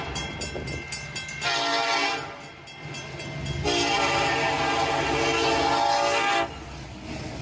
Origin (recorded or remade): recorded